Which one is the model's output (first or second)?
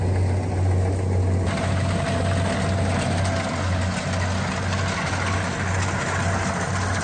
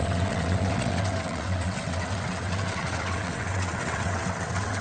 second